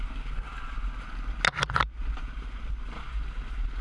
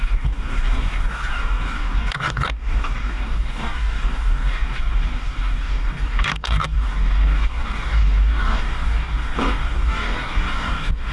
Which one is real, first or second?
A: first